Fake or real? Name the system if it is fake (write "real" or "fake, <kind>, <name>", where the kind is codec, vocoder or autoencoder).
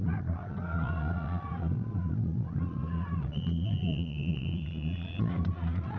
fake, vocoder, Vocos